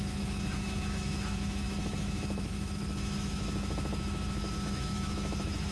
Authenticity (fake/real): fake